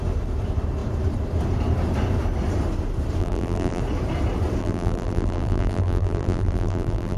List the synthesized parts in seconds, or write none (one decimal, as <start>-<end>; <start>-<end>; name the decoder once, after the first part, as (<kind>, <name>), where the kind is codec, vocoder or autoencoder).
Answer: 3.2-3.8 (vocoder, BigVGAN v2); 4.6-7.2